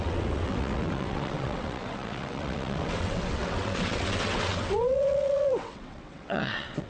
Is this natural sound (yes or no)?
no